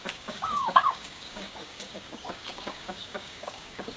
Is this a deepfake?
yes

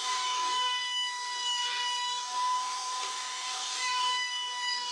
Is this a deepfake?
yes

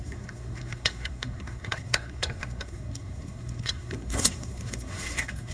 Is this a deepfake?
yes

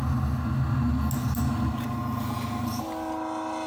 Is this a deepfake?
no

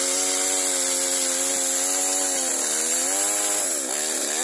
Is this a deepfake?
no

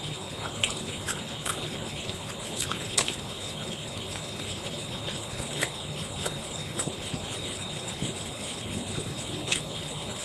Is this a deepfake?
yes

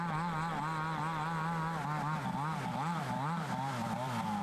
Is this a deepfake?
no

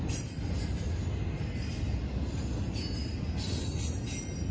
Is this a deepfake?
no